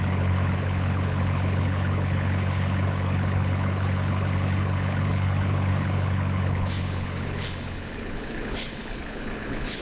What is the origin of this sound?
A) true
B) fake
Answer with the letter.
B